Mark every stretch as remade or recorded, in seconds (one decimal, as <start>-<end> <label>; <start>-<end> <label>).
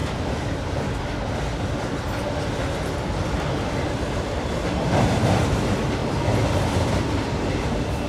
0.0-1.0 remade; 1.0-8.1 recorded